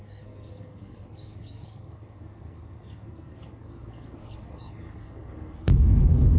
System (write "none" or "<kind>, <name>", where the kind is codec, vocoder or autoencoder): codec, SNAC